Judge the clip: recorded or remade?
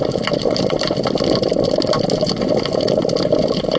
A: remade